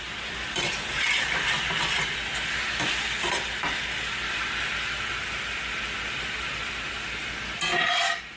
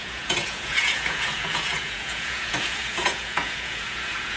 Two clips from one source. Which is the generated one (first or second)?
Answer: second